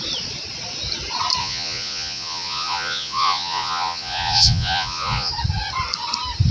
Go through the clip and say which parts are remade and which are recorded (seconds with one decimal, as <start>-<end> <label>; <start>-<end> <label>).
0.0-1.4 recorded; 1.4-5.3 remade; 5.3-6.5 recorded